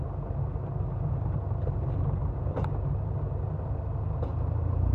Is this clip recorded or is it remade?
recorded